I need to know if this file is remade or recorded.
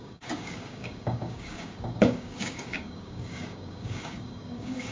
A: remade